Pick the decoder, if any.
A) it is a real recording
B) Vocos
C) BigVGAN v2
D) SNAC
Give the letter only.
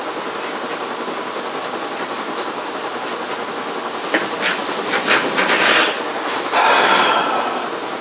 A